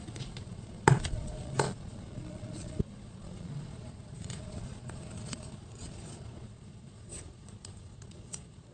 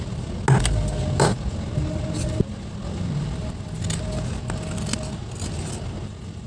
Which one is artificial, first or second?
first